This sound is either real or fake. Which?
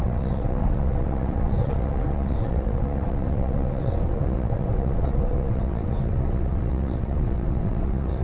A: fake